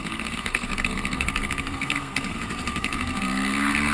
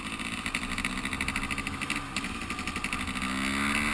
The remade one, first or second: first